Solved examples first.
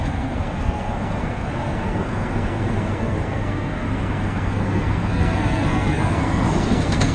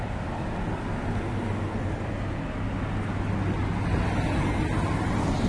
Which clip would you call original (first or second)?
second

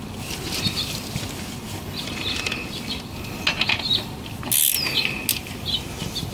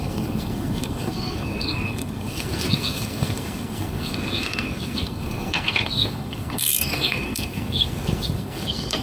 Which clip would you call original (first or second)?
first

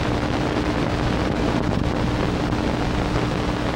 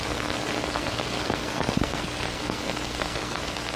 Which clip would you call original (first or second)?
first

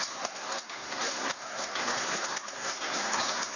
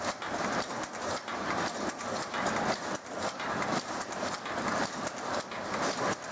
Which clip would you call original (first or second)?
second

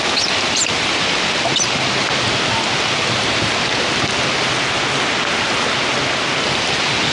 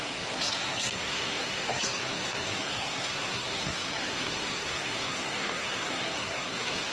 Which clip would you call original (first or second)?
first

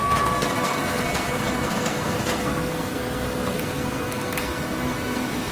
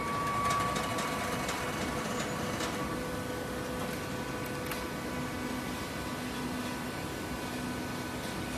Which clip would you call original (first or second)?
second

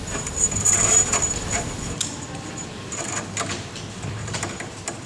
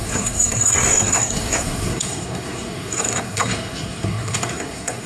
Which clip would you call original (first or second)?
first